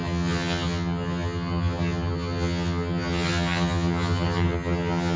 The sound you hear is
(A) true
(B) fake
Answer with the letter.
B